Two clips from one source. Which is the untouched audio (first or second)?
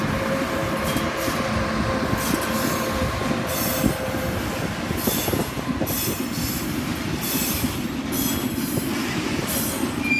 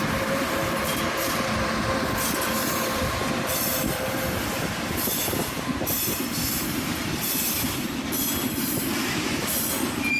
first